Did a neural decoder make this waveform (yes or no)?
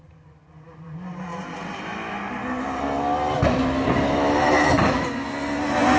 no